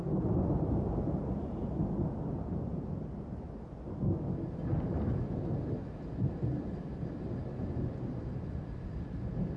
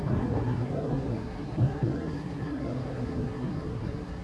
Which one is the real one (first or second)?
first